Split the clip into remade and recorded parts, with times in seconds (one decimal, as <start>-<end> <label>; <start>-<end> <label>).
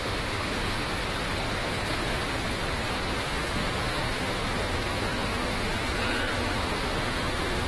0.0-0.9 remade; 0.9-1.5 recorded; 1.5-2.2 remade; 2.2-3.2 recorded; 3.2-7.7 remade